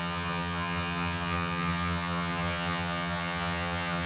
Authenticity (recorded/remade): remade